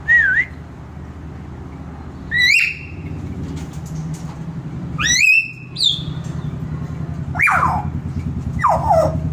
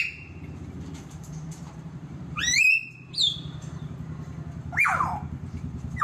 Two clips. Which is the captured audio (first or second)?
first